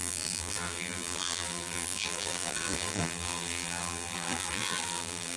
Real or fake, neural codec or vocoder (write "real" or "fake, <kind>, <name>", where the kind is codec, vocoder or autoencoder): fake, vocoder, BigVGAN v2